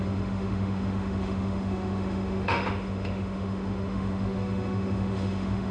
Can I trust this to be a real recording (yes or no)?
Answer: no